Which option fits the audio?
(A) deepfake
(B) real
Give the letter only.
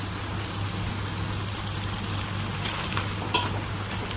B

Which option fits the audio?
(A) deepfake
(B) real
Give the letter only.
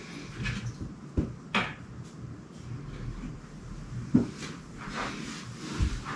B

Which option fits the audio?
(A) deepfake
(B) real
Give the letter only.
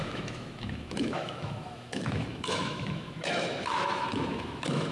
A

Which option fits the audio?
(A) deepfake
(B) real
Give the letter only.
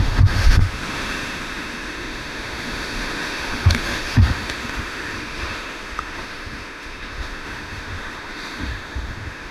A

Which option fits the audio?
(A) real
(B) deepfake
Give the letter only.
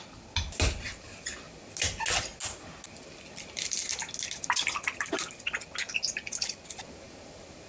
A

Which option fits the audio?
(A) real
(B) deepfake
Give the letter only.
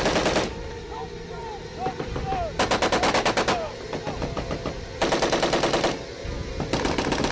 A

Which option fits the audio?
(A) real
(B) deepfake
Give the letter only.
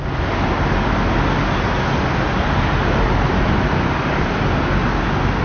A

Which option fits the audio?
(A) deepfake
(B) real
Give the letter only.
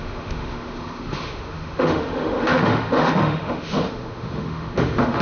A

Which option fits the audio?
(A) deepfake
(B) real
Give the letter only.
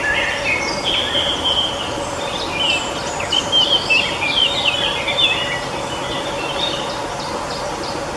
B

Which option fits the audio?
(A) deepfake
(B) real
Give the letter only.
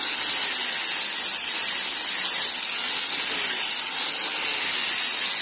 B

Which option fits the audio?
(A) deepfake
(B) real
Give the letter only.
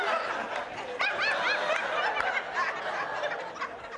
B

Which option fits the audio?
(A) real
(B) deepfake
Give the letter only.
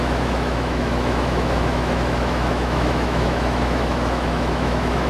B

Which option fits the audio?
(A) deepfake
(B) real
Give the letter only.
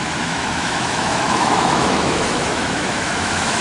A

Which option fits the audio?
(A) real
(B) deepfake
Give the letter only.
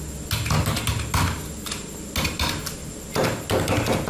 A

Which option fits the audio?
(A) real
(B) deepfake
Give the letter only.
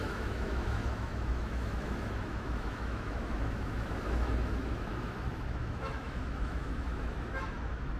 B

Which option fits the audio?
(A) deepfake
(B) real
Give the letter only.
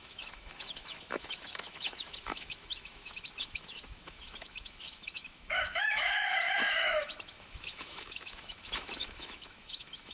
A